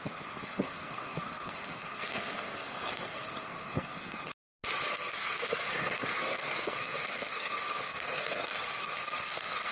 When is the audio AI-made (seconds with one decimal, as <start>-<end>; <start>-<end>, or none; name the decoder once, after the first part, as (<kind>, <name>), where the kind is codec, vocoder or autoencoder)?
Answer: 0.0-4.3 (codec, SNAC); 4.9-9.7